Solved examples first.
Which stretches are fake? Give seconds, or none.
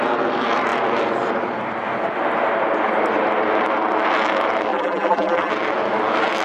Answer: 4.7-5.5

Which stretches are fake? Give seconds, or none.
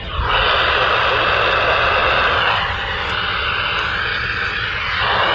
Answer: none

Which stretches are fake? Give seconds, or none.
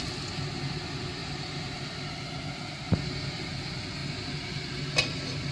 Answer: 1.2-1.8